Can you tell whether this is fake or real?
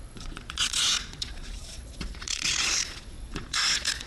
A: fake